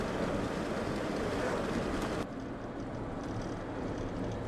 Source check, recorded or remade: recorded